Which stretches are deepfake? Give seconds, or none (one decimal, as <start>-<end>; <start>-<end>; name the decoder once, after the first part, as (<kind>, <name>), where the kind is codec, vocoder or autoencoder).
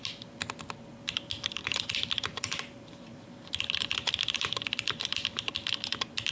none